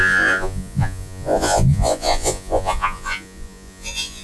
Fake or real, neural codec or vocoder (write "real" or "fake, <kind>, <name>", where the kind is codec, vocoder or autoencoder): fake, vocoder, Vocos